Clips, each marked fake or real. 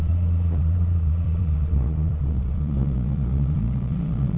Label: fake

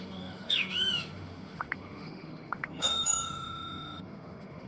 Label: fake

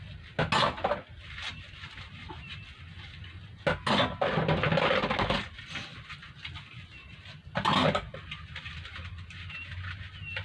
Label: real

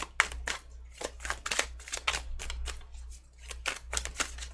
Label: real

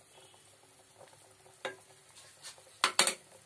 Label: real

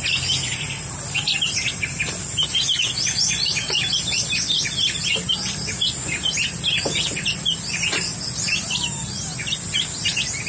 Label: real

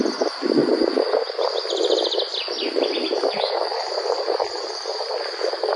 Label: real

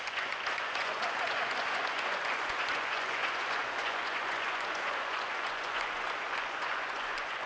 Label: fake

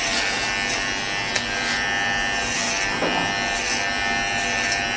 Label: real